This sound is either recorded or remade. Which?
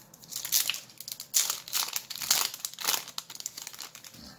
recorded